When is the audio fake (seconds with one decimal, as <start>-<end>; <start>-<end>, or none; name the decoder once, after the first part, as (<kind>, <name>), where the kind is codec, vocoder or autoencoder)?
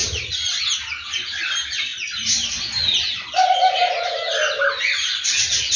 none